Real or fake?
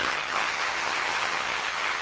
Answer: fake